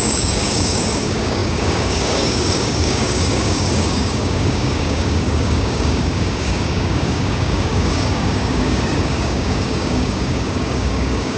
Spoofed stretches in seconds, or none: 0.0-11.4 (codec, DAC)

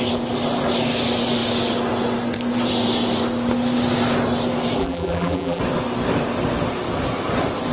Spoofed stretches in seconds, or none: 4.8-5.6 (vocoder, BigVGAN v2)

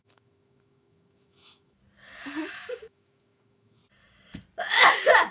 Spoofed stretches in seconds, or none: 0.0-1.8 (autoencoder, DAC-VAE); 2.4-3.8

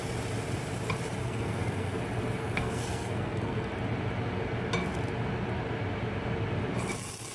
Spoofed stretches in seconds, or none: 1.2-2.0 (codec, SNAC); 2.4-3.7

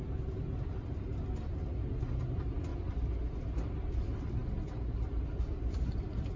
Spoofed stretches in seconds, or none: 4.4-6.0 (vocoder, BigVGAN v2)